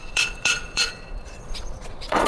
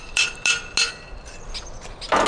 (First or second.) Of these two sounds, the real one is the second